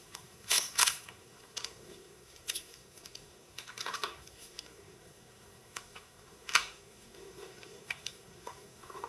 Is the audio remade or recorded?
remade